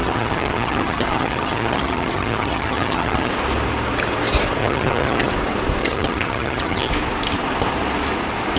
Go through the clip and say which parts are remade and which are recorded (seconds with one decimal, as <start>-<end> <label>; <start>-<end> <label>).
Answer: 0.0-3.3 remade; 3.3-4.6 recorded; 4.6-5.3 remade; 5.3-5.8 recorded; 5.8-6.9 remade; 6.9-8.6 recorded